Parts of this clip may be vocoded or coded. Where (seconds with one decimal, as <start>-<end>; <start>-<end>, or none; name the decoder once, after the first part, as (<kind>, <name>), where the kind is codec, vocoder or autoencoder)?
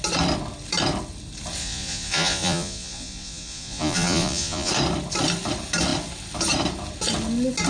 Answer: 1.6-4.7 (vocoder, Vocos)